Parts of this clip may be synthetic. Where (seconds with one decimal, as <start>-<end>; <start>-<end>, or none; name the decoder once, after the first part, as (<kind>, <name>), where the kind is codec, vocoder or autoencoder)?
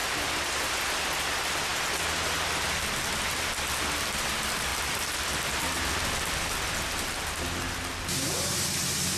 none